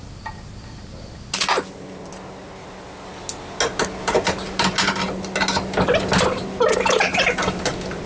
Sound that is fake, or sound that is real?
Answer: real